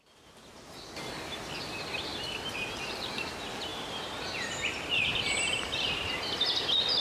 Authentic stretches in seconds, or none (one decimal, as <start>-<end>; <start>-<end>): 0.0-3.7; 6.3-7.0

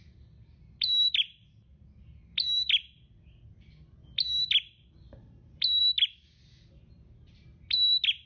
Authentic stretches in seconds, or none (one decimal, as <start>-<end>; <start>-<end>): 0.0-8.3